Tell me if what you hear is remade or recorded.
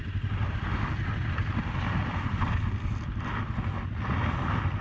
recorded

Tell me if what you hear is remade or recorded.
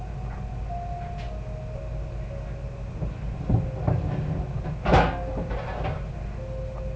recorded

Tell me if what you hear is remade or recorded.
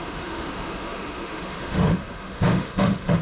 remade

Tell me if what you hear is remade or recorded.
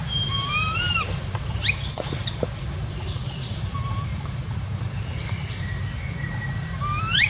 remade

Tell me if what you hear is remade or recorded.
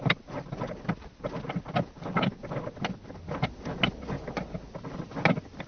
recorded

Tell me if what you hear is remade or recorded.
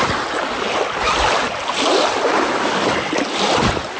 recorded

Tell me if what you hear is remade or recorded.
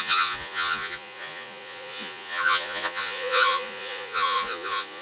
remade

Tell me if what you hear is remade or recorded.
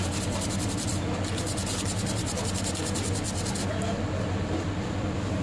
recorded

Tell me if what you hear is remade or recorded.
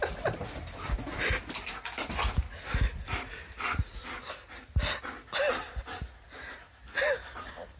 recorded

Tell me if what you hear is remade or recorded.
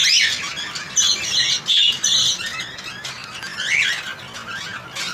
recorded